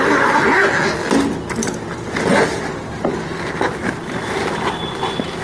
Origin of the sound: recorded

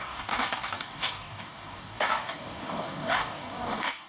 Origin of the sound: remade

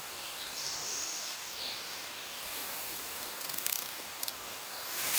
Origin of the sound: remade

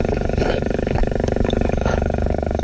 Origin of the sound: remade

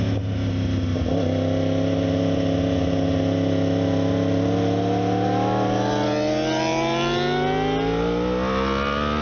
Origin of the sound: recorded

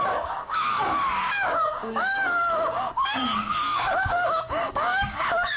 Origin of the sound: remade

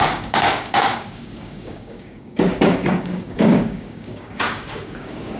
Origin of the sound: remade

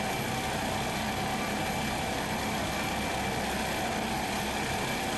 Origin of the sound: recorded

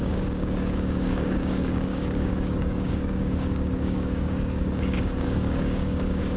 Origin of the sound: remade